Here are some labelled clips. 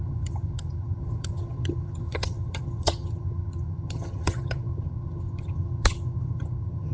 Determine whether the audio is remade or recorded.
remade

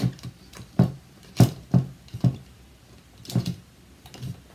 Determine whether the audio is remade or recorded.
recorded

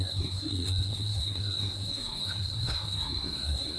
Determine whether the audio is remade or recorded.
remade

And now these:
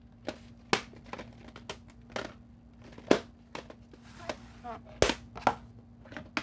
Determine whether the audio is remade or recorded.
recorded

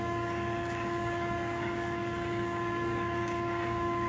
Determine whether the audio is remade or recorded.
remade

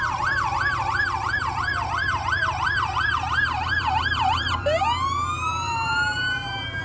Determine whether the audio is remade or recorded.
remade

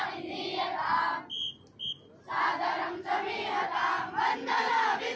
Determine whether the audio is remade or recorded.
recorded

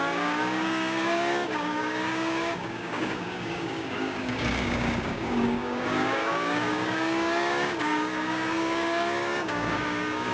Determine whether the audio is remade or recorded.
remade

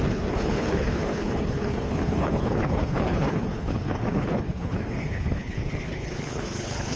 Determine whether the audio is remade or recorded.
remade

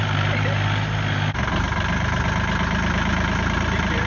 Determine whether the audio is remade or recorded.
recorded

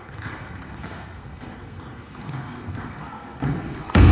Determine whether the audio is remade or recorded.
remade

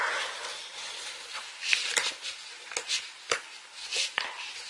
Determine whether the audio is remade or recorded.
recorded